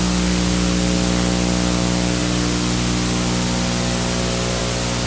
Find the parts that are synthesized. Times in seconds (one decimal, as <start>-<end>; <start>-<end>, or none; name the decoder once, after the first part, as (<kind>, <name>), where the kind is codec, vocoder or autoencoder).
none